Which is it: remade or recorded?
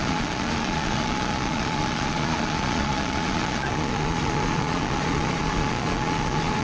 remade